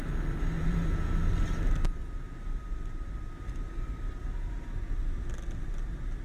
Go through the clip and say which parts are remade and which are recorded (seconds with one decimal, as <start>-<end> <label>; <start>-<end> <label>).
0.0-0.6 recorded; 0.6-1.2 remade; 1.2-6.2 recorded